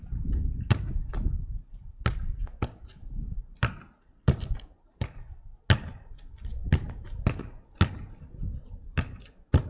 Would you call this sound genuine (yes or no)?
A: yes